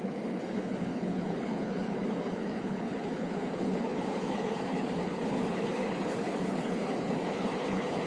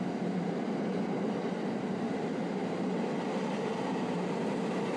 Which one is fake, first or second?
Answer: first